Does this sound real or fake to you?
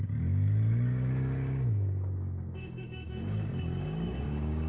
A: fake